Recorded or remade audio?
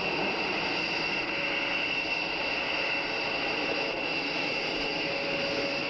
recorded